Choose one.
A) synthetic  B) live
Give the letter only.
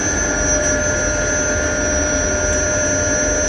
B